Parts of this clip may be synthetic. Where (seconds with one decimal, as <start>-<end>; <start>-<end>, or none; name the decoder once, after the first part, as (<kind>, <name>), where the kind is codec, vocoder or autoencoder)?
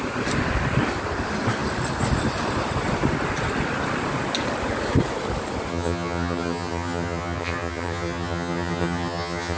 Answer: 5.7-9.6 (vocoder, HiFi-GAN)